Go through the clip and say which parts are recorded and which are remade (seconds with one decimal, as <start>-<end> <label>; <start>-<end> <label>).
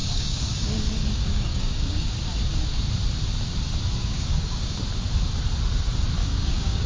0.0-2.1 remade; 2.1-4.0 recorded; 4.0-4.8 remade; 4.8-6.2 recorded; 6.2-6.9 remade